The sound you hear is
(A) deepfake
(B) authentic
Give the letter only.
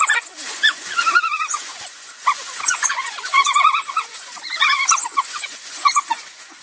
A